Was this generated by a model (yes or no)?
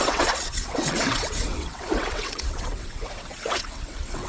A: yes